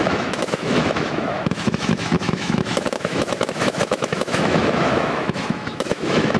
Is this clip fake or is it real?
fake